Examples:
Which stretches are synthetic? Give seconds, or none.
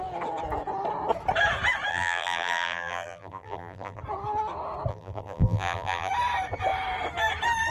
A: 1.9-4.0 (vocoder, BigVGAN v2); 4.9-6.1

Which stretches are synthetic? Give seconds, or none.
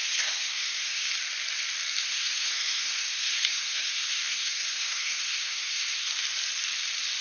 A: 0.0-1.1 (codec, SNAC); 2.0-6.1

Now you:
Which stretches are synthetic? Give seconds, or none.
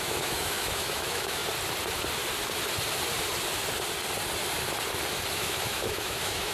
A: 0.0-1.4 (autoencoder, DAC-VAE); 5.3-6.5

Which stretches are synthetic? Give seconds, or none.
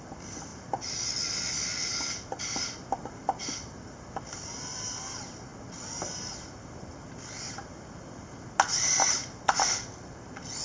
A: none